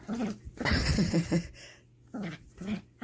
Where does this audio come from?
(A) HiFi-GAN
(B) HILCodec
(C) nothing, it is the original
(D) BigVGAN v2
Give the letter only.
C